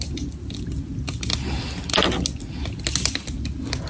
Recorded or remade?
recorded